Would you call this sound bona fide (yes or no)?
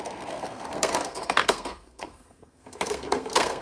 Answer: no